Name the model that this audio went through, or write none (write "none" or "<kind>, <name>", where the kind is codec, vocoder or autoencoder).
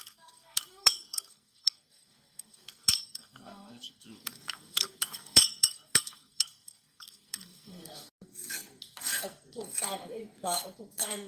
codec, SNAC